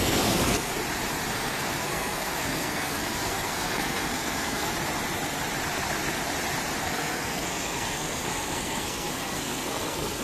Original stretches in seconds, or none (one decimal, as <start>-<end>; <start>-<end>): 0.7-1.3; 4.7-6.8